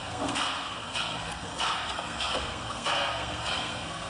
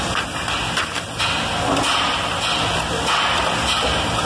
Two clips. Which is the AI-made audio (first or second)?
first